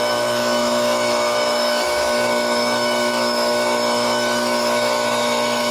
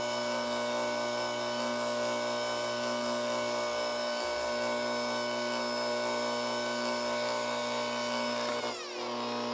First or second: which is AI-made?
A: first